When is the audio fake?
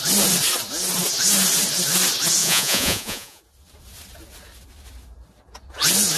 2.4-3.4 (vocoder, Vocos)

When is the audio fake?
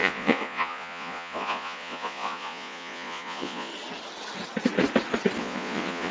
0.0-3.7 (vocoder, Vocos); 5.4-6.1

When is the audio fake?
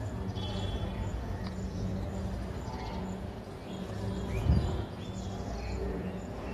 0.0-1.9 (vocoder, Vocos); 3.0-3.6; 4.4-6.5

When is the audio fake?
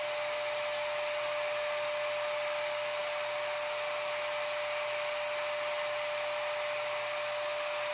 none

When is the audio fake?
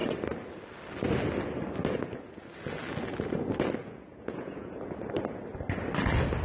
3.8-4.9 (vocoder, Vocos)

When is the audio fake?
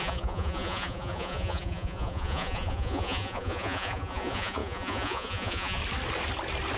0.0-5.8 (vocoder, Vocos)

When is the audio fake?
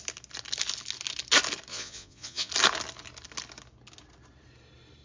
1.7-2.5 (vocoder, Vocos)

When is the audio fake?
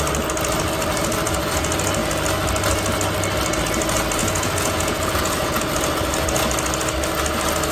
4.2-5.6 (vocoder, Vocos)